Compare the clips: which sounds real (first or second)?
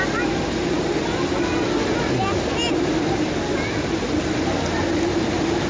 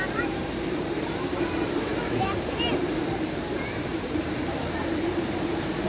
first